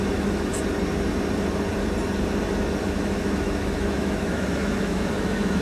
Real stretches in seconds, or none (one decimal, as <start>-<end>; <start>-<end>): 0.5-2.8